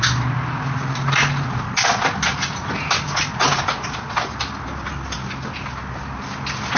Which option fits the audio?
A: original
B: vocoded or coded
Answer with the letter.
A